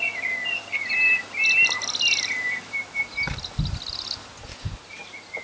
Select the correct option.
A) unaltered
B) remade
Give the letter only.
A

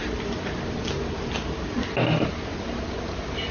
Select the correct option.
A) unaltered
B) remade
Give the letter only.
A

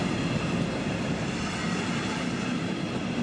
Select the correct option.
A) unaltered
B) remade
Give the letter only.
A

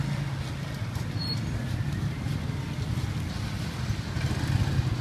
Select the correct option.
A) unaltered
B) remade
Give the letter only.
A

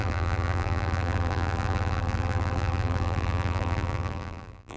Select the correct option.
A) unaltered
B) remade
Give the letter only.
B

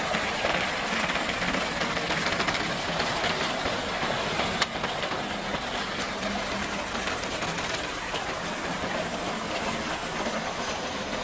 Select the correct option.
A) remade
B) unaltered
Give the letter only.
B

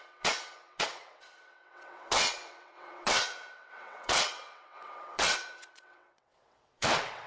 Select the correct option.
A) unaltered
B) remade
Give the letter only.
B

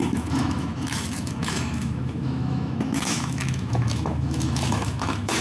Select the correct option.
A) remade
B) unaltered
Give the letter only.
A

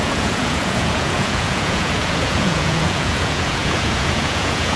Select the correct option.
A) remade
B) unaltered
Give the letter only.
A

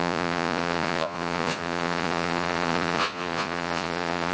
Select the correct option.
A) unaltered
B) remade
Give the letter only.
B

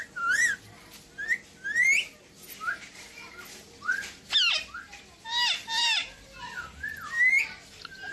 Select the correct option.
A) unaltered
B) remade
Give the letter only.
A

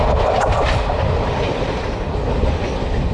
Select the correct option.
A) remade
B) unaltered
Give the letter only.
A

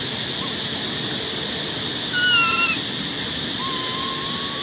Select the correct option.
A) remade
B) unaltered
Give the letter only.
B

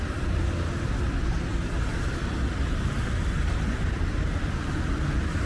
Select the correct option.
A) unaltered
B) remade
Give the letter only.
B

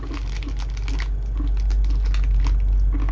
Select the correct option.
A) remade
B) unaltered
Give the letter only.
B